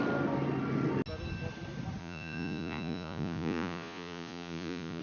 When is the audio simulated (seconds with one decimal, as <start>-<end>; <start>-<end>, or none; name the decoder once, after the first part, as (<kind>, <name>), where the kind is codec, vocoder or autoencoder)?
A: 2.0-5.0 (vocoder, Vocos)